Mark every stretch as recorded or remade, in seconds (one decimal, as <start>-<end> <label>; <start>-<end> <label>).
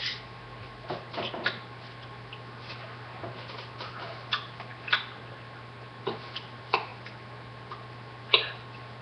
0.0-9.0 recorded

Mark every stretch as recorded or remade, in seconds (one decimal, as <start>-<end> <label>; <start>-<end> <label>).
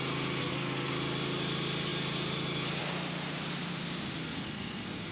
0.0-0.4 recorded; 0.4-0.9 remade; 0.9-4.2 recorded; 4.2-5.1 remade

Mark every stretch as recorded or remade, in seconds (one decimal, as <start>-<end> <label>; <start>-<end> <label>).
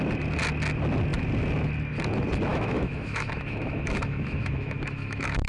0.0-2.5 recorded; 2.5-5.5 remade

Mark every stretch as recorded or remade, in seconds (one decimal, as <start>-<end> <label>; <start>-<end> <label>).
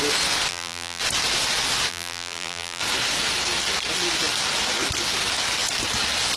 0.0-0.5 recorded; 0.5-1.0 remade; 1.0-1.9 recorded; 1.9-2.8 remade; 2.8-6.4 recorded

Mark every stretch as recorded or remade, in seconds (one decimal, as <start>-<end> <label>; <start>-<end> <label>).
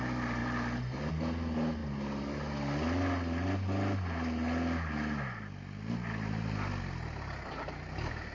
0.0-8.3 recorded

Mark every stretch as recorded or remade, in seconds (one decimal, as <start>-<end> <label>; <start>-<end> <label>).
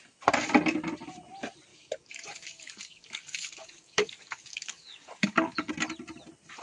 0.0-1.7 recorded; 1.7-5.7 remade; 5.7-6.6 recorded